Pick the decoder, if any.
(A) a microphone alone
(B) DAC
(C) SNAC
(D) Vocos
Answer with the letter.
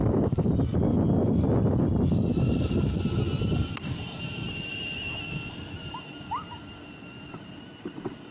A